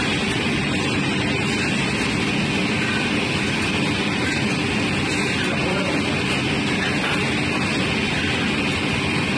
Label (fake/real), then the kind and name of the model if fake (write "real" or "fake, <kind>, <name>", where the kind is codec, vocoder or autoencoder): real